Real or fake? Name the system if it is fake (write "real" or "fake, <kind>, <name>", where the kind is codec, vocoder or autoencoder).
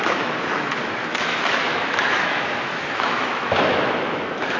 fake, autoencoder, DAC-VAE